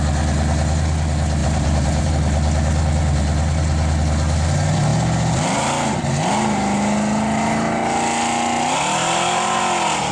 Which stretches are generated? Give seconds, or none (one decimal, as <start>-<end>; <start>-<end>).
1.4-2.1; 9.0-9.6